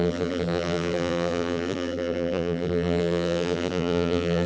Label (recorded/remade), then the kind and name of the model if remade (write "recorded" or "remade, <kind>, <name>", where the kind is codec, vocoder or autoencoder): remade, vocoder, BigVGAN v2